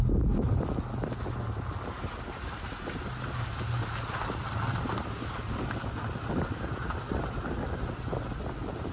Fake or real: real